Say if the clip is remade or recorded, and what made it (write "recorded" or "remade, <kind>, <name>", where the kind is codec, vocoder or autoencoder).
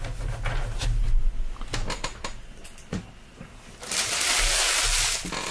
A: recorded